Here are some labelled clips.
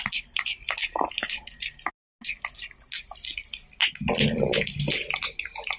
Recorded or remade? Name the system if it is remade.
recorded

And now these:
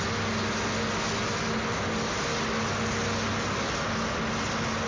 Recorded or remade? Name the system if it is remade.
recorded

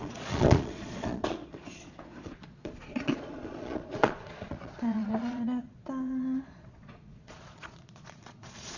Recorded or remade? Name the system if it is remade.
remade, vocoder, Vocos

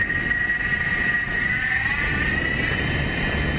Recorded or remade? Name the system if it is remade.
recorded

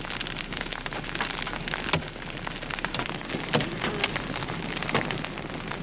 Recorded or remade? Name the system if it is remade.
recorded